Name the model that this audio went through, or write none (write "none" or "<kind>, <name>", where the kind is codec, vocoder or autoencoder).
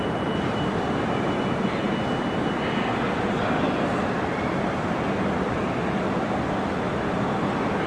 none